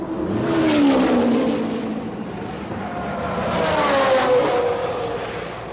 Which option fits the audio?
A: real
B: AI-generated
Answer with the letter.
A